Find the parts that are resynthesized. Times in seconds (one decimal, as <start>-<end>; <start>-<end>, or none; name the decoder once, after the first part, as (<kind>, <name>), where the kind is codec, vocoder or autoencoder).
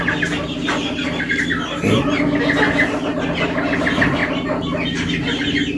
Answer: none